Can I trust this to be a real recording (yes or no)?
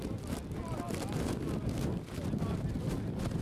yes